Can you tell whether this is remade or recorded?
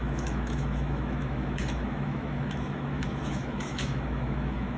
remade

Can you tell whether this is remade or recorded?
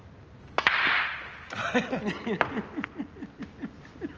recorded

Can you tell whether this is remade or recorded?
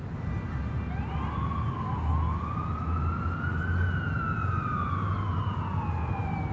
recorded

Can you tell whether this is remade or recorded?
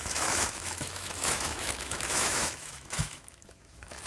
remade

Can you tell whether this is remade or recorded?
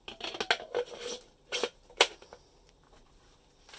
recorded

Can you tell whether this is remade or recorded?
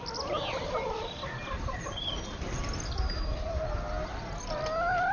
recorded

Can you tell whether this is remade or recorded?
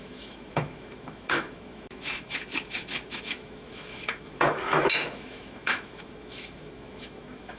remade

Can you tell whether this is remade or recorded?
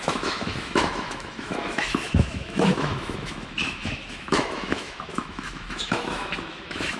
remade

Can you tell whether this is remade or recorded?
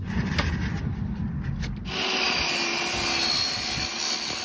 recorded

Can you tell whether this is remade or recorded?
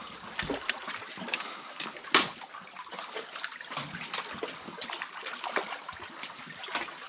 recorded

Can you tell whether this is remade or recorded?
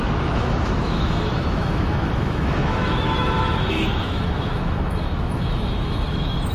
remade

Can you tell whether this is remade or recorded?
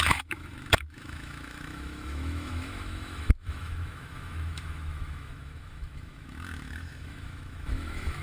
remade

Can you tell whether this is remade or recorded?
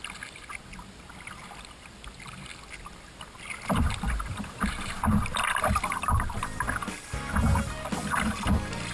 recorded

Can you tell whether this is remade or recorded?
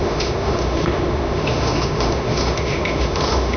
remade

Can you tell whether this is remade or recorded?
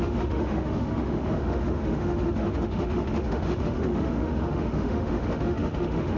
remade